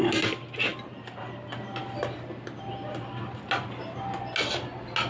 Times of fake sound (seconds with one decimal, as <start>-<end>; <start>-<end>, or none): none